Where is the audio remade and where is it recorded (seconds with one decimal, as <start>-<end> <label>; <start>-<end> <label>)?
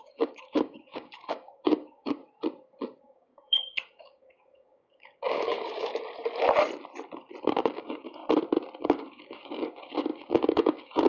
0.0-2.2 remade; 2.2-3.0 recorded; 3.0-5.9 remade; 5.9-7.4 recorded; 7.4-8.2 remade; 8.2-8.8 recorded; 8.8-11.1 remade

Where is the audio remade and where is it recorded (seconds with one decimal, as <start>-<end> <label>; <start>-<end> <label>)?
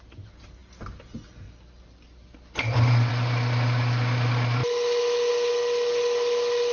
0.0-6.7 recorded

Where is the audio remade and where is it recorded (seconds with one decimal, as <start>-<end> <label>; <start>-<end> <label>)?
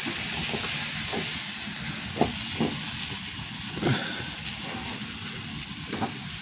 0.0-6.4 recorded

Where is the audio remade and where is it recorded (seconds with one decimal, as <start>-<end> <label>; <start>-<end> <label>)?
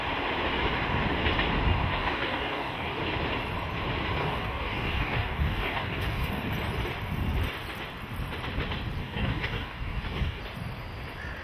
0.0-1.9 recorded; 1.9-3.0 remade; 3.0-4.2 recorded; 4.2-6.5 remade; 6.5-9.0 recorded; 9.0-10.4 remade; 10.4-11.4 recorded